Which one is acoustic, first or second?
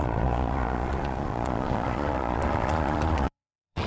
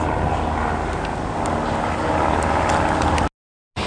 second